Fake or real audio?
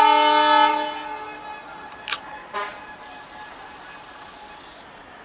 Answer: real